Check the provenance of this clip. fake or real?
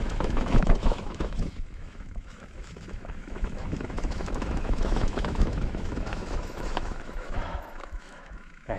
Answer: fake